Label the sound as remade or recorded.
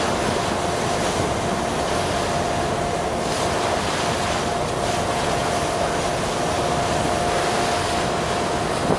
recorded